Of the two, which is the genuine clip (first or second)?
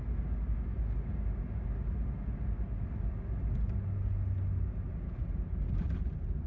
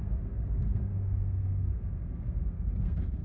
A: first